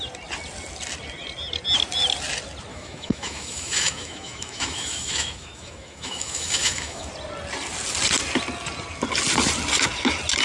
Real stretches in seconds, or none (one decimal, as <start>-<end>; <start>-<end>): 0.0-2.7; 7.1-10.4